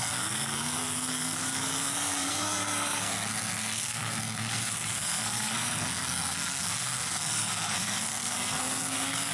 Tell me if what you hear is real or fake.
fake